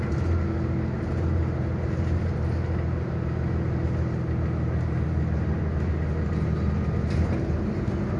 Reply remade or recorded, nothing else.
recorded